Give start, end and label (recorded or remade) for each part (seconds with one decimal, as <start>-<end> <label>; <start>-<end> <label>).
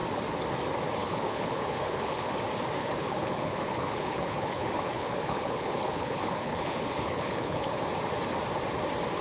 0.0-1.0 recorded; 1.0-2.3 remade; 2.3-2.8 recorded; 2.8-7.8 remade; 7.8-9.2 recorded